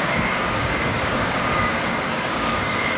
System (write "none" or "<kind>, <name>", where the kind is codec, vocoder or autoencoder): codec, DAC